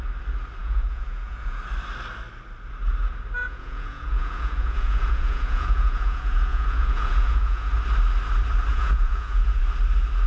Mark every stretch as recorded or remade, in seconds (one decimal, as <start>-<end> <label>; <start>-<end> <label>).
0.0-0.6 recorded; 0.6-1.6 remade; 1.6-3.4 recorded; 3.4-7.7 remade; 7.7-8.7 recorded; 8.7-9.6 remade; 9.6-10.3 recorded